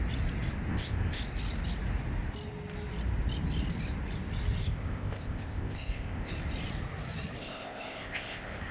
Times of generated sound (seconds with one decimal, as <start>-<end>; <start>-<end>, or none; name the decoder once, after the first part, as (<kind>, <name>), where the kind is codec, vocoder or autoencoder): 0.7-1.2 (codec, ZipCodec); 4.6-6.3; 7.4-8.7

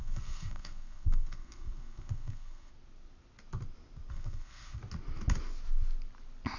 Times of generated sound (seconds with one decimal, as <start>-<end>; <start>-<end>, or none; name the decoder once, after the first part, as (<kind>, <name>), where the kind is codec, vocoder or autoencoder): 0.0-2.7 (codec, SNAC); 4.1-4.8

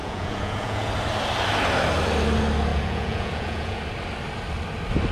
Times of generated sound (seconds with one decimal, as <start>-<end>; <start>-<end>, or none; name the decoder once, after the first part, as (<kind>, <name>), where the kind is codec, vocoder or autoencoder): 0.0-0.9 (vocoder, Vocos); 2.7-3.8

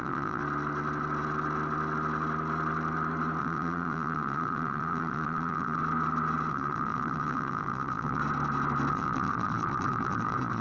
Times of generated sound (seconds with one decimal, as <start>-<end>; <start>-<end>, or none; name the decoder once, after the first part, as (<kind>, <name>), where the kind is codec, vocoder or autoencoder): 0.0-0.4 (vocoder, Vocos); 3.4-5.8; 6.5-8.2; 8.9-10.6

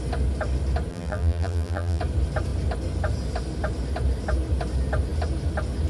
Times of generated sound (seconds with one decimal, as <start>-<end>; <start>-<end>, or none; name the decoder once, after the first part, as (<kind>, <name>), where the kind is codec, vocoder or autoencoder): 0.9-2.0 (vocoder, BigVGAN v2)

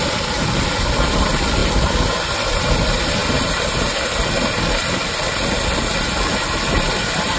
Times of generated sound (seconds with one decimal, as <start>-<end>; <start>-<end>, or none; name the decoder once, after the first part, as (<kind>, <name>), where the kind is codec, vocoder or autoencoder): none

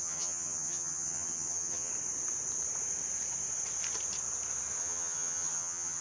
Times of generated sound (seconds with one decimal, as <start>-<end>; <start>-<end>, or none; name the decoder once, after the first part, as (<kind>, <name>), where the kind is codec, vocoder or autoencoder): 0.0-1.9 (vocoder, HiFi-GAN); 4.8-6.0

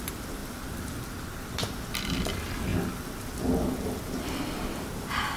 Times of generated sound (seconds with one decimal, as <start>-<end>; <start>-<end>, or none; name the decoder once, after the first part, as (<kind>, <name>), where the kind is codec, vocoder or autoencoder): none